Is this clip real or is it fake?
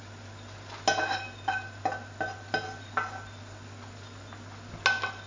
real